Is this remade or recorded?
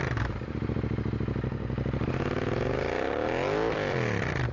recorded